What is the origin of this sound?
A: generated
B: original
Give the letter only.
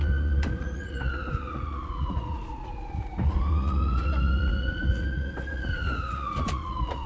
A